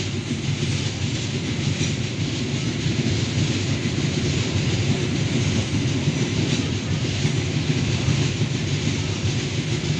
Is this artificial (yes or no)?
no